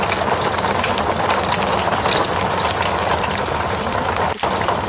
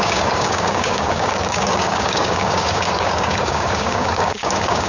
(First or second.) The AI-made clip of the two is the second